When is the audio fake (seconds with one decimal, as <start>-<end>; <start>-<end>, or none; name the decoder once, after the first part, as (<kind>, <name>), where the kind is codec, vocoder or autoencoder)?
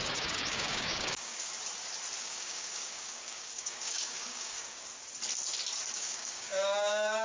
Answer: 0.0-1.5 (codec, DAC); 2.2-4.9; 5.9-7.2